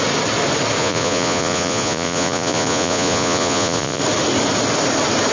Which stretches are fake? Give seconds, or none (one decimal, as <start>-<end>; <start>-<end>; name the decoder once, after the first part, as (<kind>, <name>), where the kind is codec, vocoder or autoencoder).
0.8-4.0 (vocoder, Vocos)